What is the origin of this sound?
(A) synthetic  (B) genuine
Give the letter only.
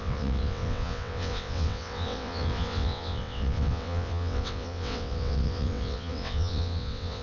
A